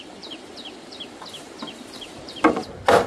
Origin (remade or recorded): remade